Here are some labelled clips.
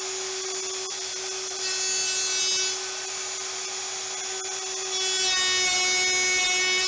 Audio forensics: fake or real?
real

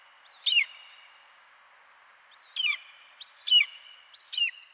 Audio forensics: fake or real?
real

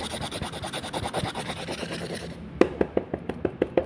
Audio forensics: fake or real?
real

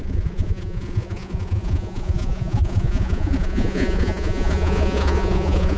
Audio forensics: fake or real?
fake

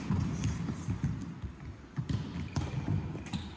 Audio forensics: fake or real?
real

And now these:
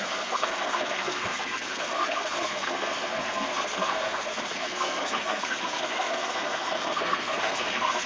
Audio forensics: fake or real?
fake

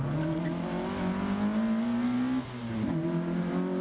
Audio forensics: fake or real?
real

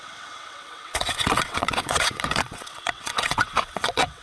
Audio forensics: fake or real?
fake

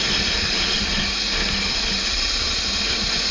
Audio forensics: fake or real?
real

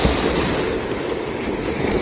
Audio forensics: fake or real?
real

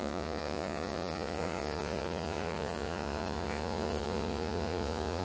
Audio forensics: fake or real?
fake